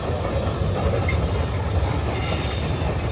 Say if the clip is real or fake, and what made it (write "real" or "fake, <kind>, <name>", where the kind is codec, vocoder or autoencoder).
real